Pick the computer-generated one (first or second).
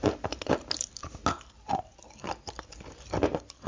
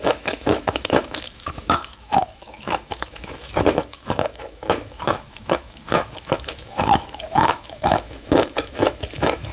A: second